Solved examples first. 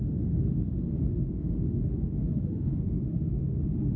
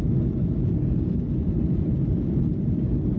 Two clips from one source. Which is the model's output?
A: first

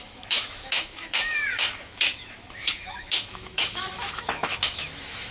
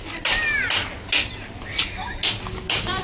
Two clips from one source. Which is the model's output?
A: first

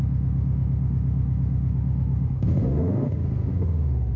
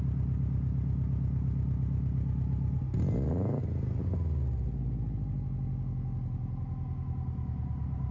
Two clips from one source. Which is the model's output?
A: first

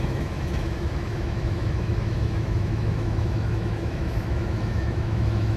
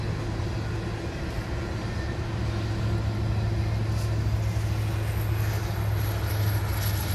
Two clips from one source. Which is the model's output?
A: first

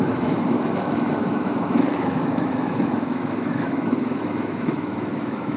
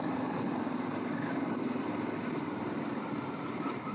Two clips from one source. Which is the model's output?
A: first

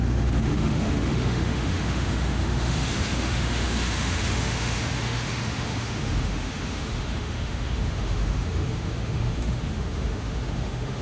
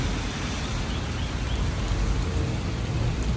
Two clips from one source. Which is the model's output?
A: first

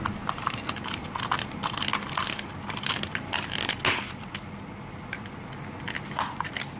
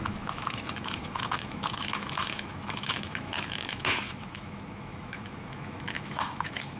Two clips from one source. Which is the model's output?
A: second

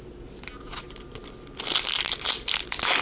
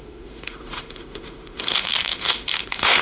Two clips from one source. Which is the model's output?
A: second